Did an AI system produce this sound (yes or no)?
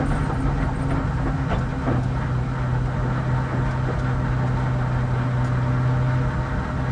no